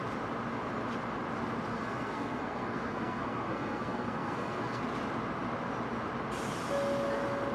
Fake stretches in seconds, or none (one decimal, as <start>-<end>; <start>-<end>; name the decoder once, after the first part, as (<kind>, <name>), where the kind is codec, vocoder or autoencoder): 1.7-4.8 (codec, SNAC)